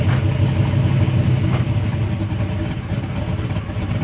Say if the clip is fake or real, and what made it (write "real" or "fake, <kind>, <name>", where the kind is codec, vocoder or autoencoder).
real